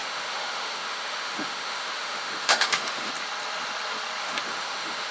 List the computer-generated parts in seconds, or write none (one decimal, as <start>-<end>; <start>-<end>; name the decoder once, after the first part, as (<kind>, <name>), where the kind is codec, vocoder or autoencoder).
0.0-3.1 (autoencoder, DAC-VAE); 4.2-5.1